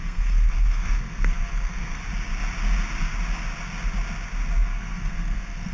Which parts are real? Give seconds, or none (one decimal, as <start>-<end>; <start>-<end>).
2.0-4.6